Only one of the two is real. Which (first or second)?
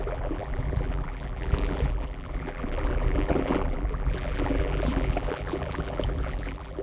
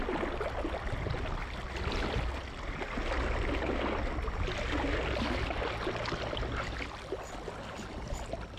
second